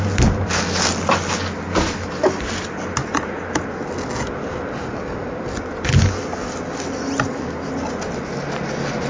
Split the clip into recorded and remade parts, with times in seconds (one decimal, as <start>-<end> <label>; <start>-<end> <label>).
0.0-9.1 recorded